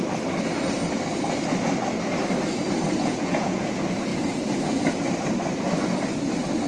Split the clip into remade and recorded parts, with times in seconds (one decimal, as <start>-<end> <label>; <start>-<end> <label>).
0.0-3.0 recorded; 3.0-3.6 remade; 3.6-6.7 recorded